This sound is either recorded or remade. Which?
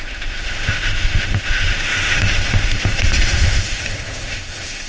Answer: remade